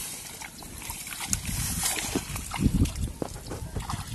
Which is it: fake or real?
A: real